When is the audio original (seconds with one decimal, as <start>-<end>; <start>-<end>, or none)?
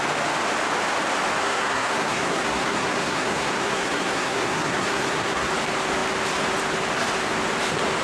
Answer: 0.0-1.4; 5.5-8.0